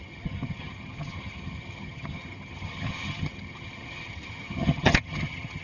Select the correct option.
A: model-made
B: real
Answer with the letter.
A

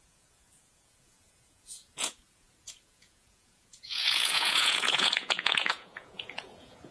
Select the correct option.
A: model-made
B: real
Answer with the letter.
A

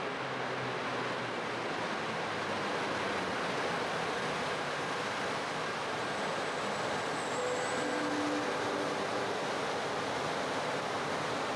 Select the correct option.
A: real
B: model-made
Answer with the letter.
A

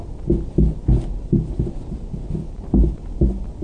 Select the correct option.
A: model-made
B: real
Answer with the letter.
B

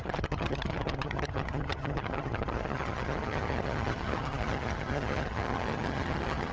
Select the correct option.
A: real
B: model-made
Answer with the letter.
B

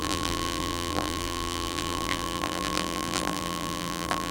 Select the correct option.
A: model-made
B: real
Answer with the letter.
A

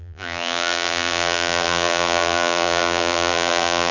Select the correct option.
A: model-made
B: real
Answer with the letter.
A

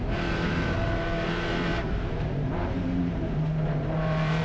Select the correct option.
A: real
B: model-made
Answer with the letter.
B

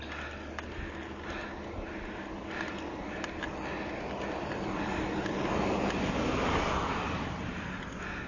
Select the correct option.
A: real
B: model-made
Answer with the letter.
A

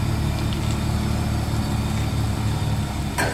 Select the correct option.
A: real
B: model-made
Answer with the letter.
A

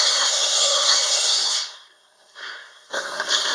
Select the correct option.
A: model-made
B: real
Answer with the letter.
A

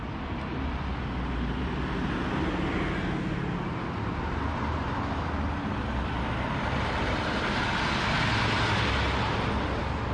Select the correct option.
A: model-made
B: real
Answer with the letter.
B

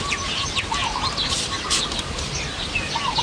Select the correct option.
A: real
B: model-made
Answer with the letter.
A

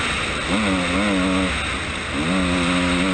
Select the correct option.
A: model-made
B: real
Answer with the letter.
B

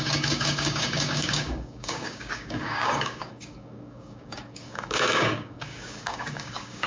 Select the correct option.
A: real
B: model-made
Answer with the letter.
B